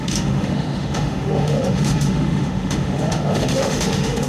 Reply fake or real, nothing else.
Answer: fake